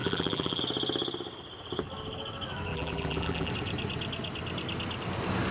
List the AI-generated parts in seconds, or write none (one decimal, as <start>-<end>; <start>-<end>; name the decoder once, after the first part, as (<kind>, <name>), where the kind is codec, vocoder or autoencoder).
0.0-0.6 (vocoder, BigVGAN v2); 2.7-3.5